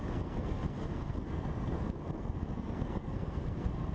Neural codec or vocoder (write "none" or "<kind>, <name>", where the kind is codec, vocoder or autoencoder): codec, SNAC